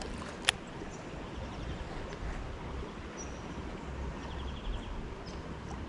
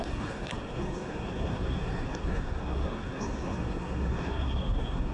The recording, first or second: first